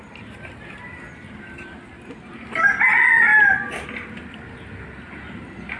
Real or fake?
real